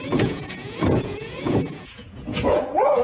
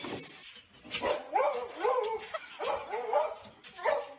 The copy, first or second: first